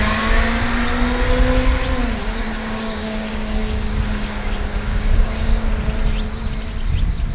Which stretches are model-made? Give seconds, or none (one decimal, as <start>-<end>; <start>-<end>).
2.2-5.7

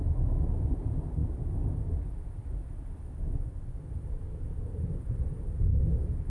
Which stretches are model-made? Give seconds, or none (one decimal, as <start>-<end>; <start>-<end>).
none